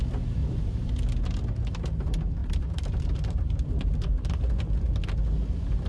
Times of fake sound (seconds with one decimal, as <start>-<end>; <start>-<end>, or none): 0.4-0.9; 2.4-4.6